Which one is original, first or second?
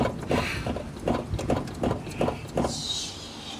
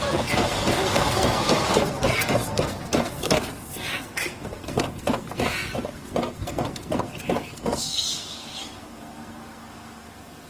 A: first